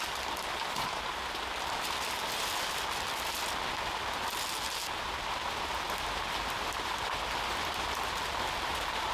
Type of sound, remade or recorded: recorded